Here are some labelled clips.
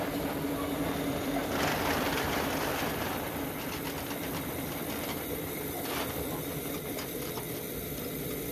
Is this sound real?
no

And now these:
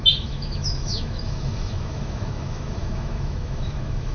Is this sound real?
no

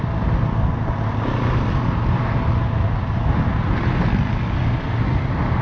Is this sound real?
yes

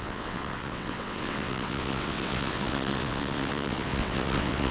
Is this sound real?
no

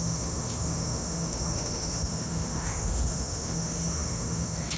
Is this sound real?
no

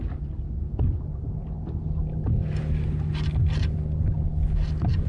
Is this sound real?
yes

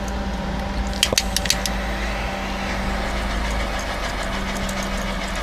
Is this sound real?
yes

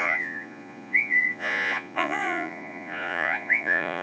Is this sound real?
no